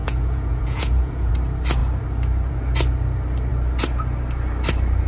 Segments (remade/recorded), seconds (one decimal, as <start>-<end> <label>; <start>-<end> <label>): 0.0-1.3 remade; 1.3-5.1 recorded